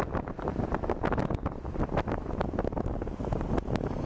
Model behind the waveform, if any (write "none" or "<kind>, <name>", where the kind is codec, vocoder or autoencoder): none